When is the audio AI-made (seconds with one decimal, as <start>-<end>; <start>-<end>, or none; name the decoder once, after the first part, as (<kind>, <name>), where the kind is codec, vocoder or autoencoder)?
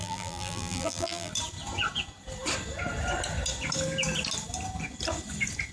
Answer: 0.0-1.3 (vocoder, BigVGAN v2)